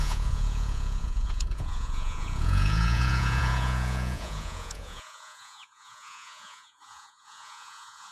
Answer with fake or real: fake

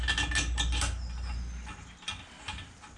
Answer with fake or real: real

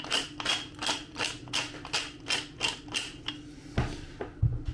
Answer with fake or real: real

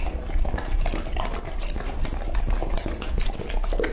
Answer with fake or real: real